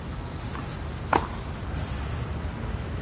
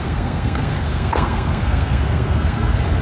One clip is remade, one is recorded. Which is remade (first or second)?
second